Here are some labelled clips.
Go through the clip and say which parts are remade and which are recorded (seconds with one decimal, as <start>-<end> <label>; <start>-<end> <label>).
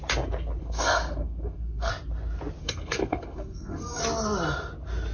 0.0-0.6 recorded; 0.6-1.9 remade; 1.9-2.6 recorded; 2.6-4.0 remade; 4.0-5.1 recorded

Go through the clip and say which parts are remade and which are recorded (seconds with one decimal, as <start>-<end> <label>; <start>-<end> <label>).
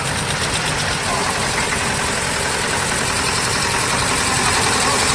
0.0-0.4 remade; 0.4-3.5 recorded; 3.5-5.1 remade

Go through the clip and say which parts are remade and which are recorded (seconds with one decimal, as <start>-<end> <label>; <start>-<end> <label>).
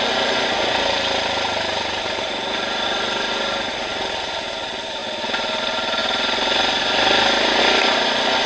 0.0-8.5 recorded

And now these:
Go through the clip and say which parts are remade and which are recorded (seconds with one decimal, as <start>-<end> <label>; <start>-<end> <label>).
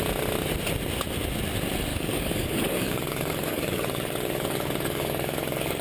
0.0-1.9 recorded; 1.9-5.8 remade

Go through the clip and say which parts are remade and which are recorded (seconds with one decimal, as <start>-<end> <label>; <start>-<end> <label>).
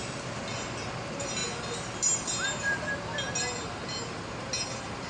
0.0-5.1 recorded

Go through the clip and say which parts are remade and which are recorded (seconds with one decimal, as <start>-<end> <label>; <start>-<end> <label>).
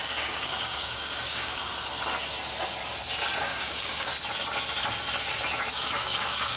0.0-1.7 remade; 1.7-3.4 recorded; 3.4-4.1 remade; 4.1-5.7 recorded; 5.7-6.6 remade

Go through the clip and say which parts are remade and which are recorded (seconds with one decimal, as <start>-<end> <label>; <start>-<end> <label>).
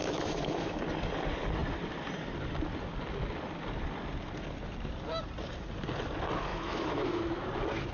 0.0-0.8 remade; 0.8-6.5 recorded; 6.5-7.5 remade; 7.5-7.9 recorded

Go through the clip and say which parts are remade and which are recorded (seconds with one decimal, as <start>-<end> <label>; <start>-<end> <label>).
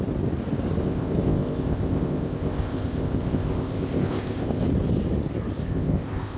0.0-0.8 recorded; 0.8-4.6 remade; 4.6-5.6 recorded; 5.6-6.4 remade